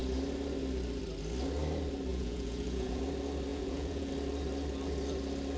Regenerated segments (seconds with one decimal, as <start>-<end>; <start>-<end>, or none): 2.1-3.0; 3.5-4.1